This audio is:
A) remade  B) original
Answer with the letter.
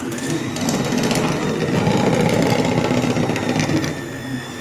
B